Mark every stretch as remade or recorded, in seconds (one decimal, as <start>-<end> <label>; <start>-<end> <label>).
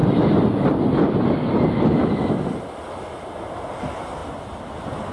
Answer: 0.0-5.1 recorded